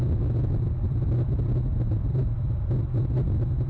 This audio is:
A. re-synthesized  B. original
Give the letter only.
B